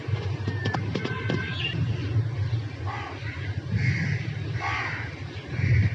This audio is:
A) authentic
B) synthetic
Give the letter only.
A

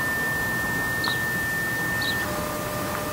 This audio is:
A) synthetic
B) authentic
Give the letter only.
B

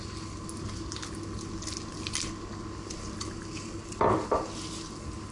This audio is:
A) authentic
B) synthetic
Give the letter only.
A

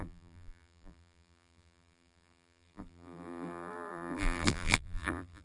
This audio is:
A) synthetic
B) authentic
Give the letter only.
A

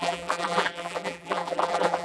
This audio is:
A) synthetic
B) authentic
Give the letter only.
A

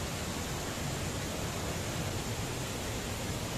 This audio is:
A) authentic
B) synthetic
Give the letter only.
A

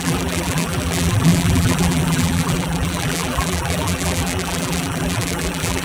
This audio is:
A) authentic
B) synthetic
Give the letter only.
B